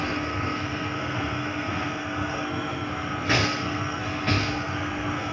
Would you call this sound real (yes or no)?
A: no